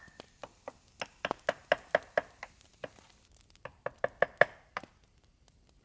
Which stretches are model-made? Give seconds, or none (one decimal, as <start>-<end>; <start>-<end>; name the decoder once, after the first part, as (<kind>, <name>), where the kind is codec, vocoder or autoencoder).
none